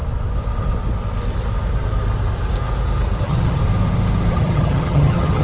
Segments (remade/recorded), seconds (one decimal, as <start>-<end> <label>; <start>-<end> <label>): 0.0-3.2 recorded; 3.2-3.6 remade; 3.6-4.3 recorded; 4.3-5.4 remade